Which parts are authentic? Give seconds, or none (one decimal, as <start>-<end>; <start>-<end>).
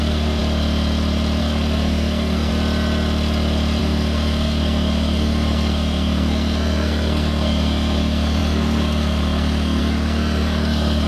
0.4-1.4; 2.5-3.8